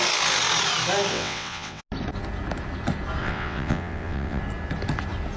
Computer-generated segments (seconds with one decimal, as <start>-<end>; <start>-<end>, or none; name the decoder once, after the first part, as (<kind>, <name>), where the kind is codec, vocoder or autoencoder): 1.1-1.8 (vocoder, WaveNeXt); 3.2-4.4